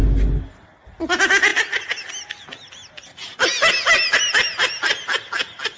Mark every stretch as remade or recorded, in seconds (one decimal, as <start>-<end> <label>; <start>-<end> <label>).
0.0-5.8 recorded